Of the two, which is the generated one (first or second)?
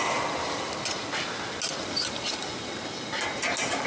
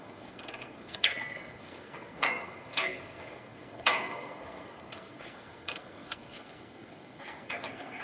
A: second